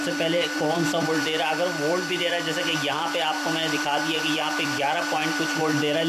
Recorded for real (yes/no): no